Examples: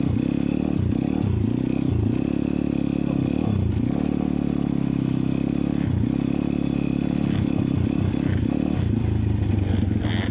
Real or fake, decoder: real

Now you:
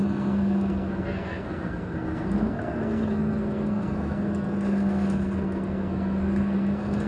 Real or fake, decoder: fake, codec, SNAC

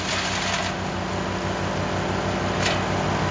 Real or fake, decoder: real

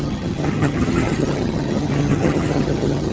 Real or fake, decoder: fake, vocoder, HiFi-GAN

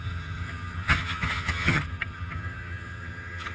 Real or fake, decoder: fake, vocoder, HiFi-GAN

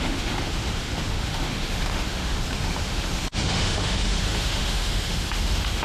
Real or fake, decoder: fake, autoencoder, DAC-VAE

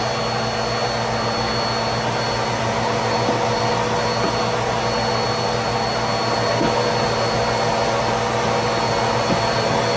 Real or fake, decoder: real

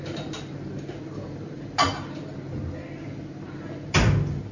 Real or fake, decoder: real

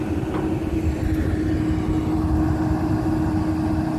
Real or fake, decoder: real